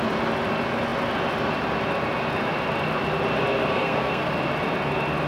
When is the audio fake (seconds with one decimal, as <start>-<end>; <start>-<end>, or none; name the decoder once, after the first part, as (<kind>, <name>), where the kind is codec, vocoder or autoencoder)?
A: 3.7-4.3 (codec, SNAC)